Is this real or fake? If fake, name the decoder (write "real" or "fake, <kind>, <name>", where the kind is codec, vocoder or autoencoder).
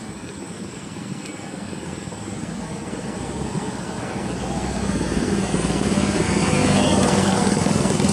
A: fake, codec, SNAC